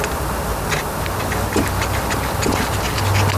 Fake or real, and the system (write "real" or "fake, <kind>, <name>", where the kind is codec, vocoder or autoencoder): real